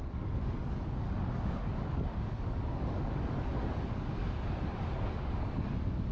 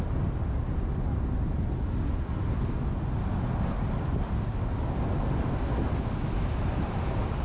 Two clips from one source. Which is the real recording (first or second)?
second